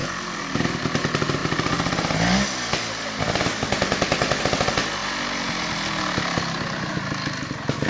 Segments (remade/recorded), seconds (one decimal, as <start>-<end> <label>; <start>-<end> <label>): 0.0-7.9 recorded